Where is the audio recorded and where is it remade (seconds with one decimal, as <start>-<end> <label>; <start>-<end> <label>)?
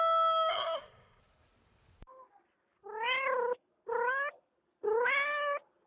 0.0-0.5 recorded; 0.5-1.2 remade; 1.2-5.9 recorded